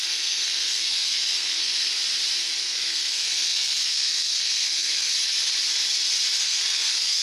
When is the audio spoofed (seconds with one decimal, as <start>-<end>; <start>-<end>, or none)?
0.0-1.9; 2.6-5.1; 6.4-7.2